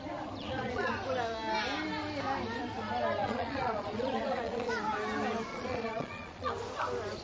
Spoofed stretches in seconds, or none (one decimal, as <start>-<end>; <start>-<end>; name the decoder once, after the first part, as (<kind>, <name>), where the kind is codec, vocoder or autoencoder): 0.4-0.9 (vocoder, Vocos); 3.2-4.7; 5.5-6.5